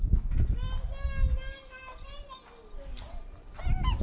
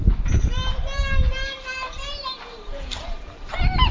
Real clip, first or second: first